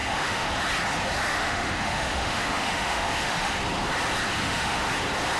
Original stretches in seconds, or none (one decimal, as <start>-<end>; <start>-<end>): 0.5-1.3; 3.5-4.4; 4.9-5.4